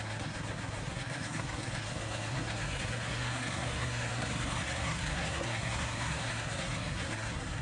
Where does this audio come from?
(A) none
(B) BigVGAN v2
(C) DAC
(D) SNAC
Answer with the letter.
D